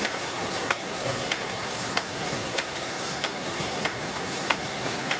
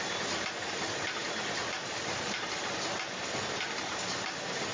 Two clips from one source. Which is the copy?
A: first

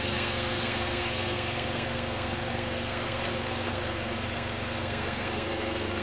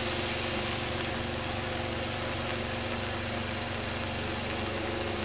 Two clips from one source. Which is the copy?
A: first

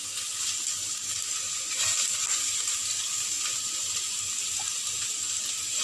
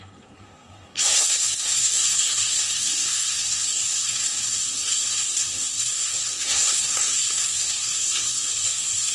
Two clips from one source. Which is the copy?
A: second